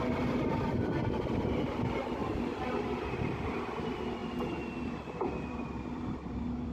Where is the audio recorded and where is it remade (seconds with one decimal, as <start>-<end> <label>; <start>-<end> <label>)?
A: 0.0-1.0 remade; 1.0-1.8 recorded; 1.8-4.2 remade; 4.2-4.8 recorded; 4.8-6.7 remade